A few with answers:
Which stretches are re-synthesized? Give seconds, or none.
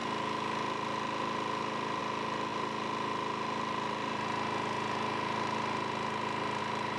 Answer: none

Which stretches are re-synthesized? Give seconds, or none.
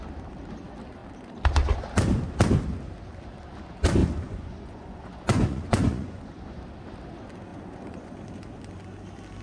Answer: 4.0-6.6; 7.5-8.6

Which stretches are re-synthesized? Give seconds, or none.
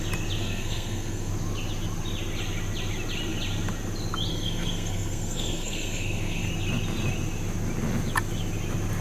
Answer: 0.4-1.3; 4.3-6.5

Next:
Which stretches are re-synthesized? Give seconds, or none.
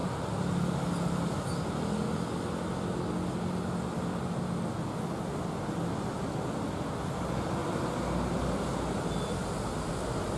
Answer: none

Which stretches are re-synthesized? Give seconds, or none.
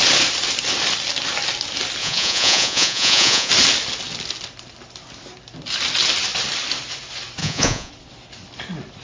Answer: 2.0-3.5; 7.4-7.9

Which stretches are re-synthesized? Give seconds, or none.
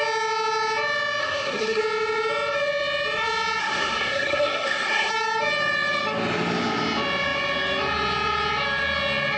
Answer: 1.2-1.8; 3.6-5.1